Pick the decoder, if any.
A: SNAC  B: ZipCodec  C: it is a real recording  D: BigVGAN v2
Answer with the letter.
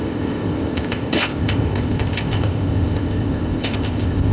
B